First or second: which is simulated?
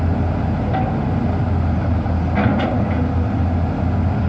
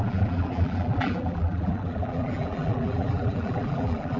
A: second